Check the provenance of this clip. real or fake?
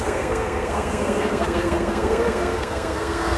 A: fake